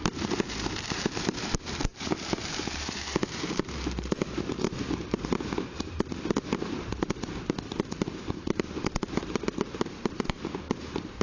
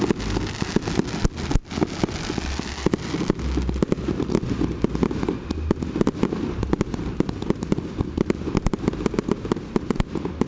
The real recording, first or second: second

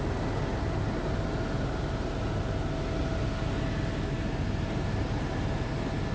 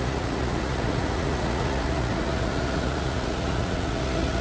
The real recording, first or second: first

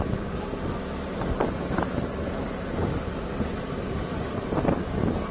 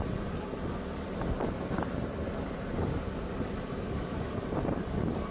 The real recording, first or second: first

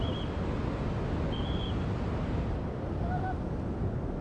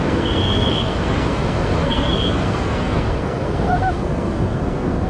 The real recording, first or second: first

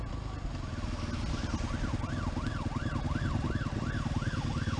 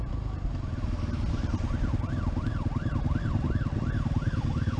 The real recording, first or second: first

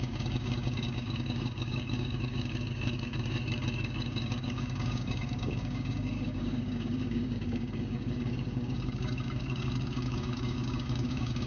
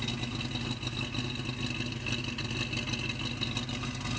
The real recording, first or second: second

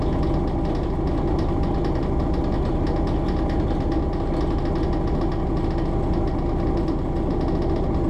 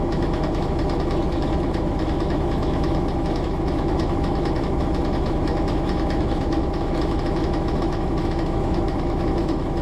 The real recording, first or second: first